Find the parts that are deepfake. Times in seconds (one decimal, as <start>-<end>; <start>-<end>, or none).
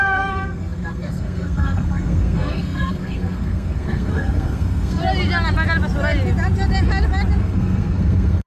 0.0-5.0; 7.4-8.5